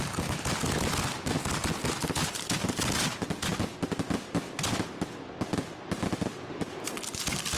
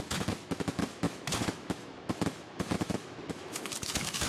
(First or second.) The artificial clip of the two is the second